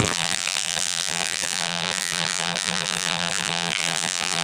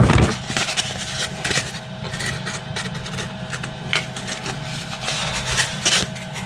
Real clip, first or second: second